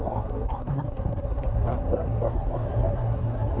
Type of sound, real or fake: fake